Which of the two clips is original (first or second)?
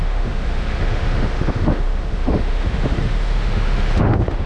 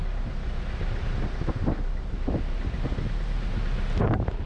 second